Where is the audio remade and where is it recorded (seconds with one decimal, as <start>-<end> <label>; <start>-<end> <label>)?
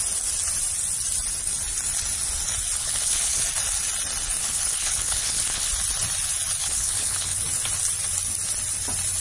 0.0-2.8 recorded; 2.8-3.4 remade; 3.4-4.4 recorded; 4.4-5.7 remade; 5.7-6.6 recorded; 6.6-7.4 remade; 7.4-9.2 recorded